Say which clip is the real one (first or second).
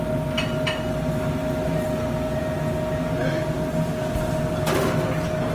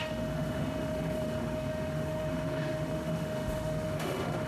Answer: first